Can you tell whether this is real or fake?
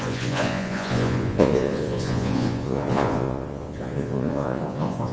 fake